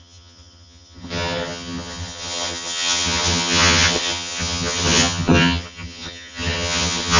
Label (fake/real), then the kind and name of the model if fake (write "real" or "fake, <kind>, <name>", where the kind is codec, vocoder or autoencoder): fake, vocoder, HiFi-GAN